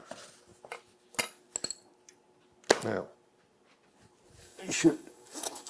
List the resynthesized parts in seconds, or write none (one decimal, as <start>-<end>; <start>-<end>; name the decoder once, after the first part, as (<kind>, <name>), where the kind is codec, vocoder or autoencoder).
4.4-5.7 (codec, DAC)